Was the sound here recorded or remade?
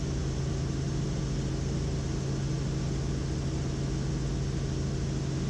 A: recorded